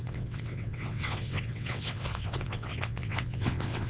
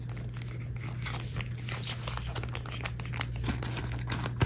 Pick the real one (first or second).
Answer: second